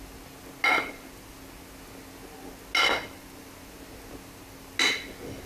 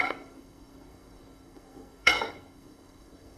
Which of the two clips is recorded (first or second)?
first